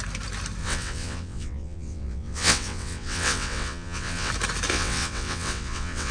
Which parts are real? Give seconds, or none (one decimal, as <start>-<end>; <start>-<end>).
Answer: 0.0-0.6; 4.3-4.7